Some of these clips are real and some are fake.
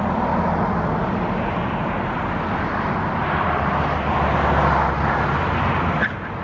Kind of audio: real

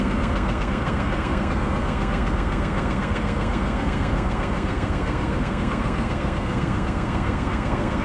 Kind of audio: fake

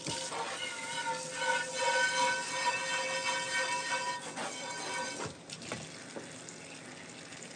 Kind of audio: real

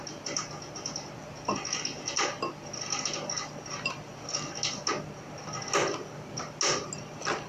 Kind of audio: real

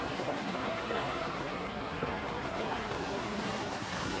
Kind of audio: fake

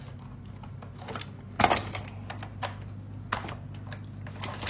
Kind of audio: real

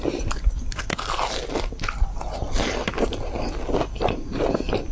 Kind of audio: real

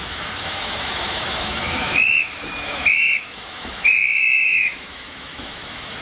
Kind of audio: fake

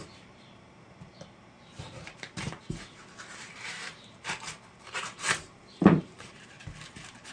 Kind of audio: fake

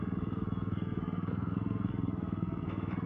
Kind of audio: fake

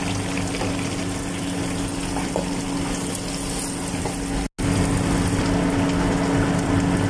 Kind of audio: real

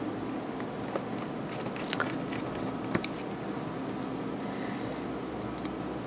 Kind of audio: real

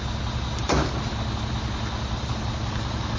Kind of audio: real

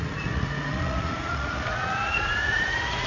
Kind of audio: fake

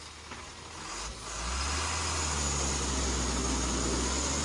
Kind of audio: real